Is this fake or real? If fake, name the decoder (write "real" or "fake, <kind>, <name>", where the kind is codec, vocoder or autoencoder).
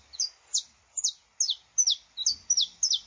real